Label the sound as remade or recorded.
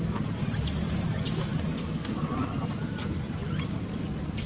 recorded